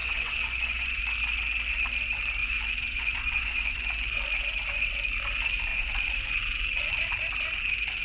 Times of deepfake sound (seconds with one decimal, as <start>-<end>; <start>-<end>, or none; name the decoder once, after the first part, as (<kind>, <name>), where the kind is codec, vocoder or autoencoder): 0.0-1.0 (vocoder, Vocos); 2.4-4.3; 5.7-6.9

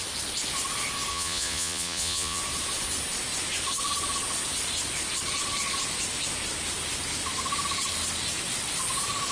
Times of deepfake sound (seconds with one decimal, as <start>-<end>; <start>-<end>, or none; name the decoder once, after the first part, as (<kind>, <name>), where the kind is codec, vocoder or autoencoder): 1.1-2.4 (vocoder, Vocos)

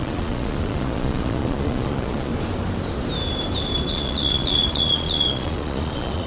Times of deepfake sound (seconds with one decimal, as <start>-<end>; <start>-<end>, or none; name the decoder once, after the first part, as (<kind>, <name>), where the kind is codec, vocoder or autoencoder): 0.0-2.3 (vocoder, Vocos); 3.9-6.3

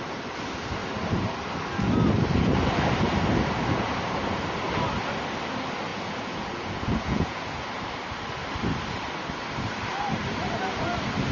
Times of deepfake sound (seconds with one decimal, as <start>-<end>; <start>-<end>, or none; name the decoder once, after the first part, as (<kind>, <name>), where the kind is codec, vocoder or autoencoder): 5.9-7.6 (vocoder, Vocos)

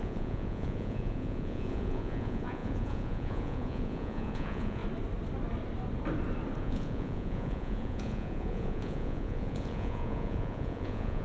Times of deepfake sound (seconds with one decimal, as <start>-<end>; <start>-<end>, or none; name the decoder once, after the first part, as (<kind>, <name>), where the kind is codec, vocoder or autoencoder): 0.0-4.8 (vocoder, Vocos); 6.6-11.2

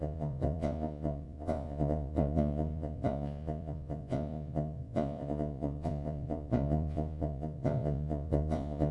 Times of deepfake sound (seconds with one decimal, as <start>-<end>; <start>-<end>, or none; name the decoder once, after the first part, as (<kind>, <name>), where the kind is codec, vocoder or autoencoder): 0.0-8.9 (vocoder, Vocos)

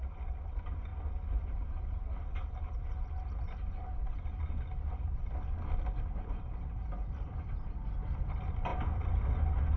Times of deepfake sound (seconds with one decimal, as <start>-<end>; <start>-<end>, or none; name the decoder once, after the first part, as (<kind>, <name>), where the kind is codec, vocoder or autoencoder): none

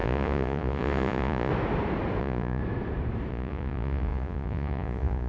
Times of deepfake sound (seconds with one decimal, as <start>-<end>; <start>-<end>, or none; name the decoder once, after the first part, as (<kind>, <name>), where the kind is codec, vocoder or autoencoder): 0.0-1.5 (vocoder, Vocos); 2.2-2.6; 3.3-5.3